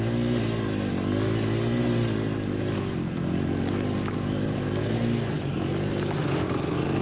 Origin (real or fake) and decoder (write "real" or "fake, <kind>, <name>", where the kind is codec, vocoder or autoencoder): real